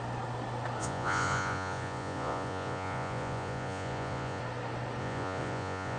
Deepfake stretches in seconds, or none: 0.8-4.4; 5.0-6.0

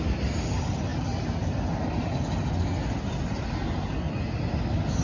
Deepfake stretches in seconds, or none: none

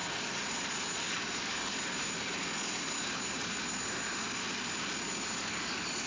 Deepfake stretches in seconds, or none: 1.1-1.7; 5.4-6.1

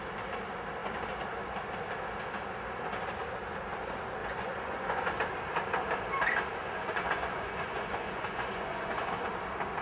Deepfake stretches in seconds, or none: 4.2-5.1; 6.6-9.3

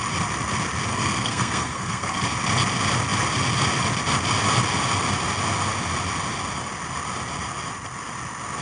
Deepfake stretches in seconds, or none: 0.9-2.2

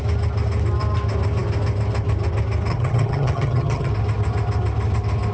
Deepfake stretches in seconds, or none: 2.7-3.9

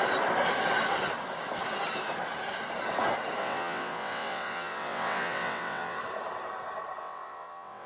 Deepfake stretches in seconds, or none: 3.4-6.0; 7.0-7.9